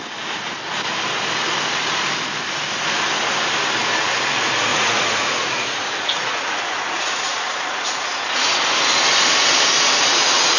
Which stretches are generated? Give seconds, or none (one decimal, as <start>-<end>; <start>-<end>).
4.7-8.2